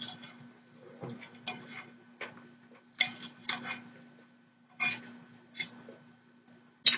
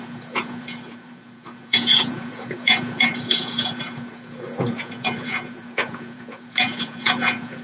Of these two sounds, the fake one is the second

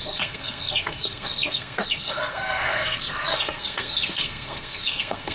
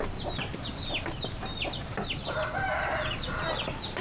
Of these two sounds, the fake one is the first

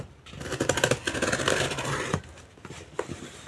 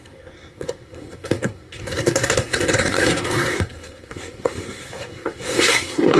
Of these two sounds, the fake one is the second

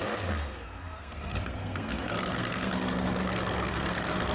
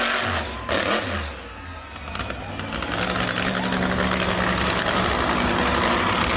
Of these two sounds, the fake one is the first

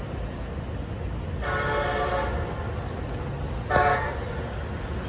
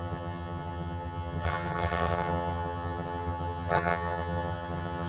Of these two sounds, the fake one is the second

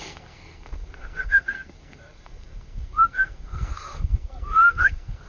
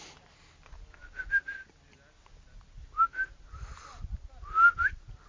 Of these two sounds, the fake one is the first